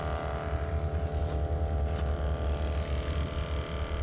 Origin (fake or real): real